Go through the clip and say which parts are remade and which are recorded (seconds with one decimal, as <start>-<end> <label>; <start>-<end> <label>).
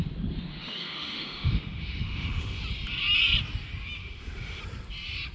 0.0-0.5 recorded; 0.5-2.6 remade; 2.6-4.0 recorded; 4.0-4.6 remade; 4.6-5.3 recorded